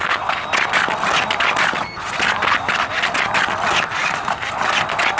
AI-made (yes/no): no